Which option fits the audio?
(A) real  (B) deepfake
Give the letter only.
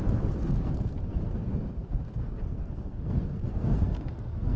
B